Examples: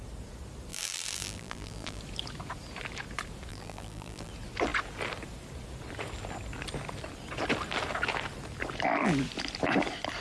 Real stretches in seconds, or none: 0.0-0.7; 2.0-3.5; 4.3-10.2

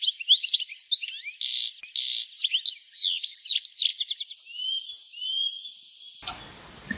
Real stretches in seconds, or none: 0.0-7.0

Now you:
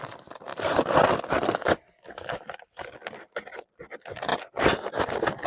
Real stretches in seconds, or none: 0.0-0.5; 3.8-5.5

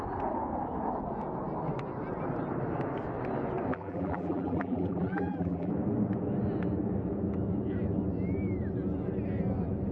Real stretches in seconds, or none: 0.0-3.7; 5.7-9.9

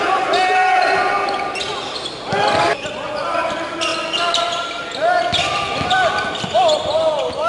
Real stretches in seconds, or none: 0.0-7.5